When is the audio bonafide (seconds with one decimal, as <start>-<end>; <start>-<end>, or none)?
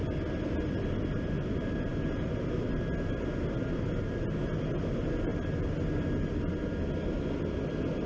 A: 0.0-8.1